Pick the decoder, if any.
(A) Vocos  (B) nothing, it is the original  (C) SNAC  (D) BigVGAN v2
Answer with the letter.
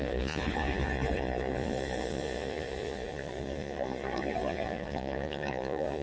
A